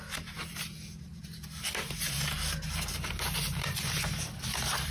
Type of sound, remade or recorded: remade